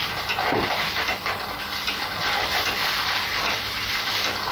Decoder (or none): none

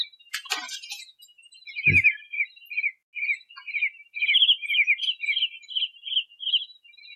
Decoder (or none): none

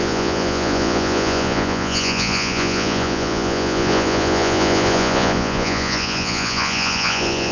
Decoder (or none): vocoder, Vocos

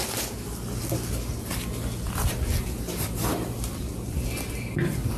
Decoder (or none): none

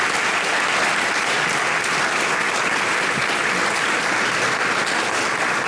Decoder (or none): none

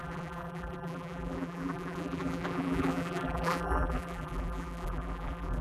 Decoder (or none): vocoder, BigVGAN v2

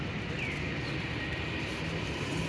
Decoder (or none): none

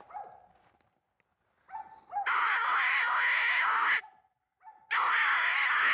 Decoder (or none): none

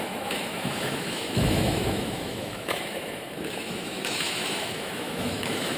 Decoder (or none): autoencoder, DAC-VAE